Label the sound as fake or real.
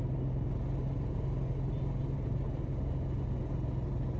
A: real